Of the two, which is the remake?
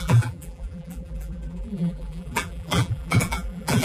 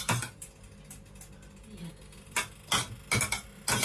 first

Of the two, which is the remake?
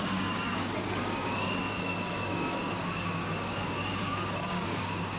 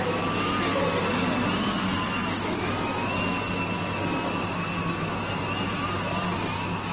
first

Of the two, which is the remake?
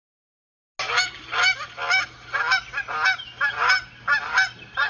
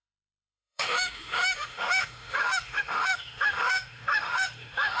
second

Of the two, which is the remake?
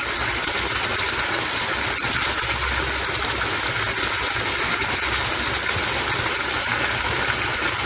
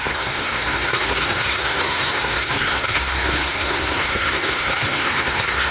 second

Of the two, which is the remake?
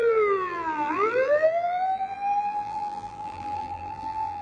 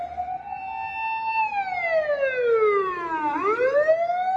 first